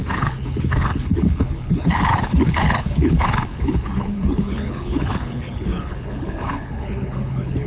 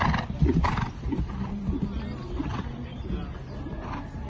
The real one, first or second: second